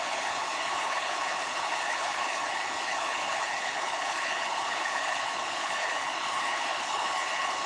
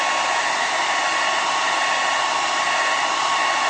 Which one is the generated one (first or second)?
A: first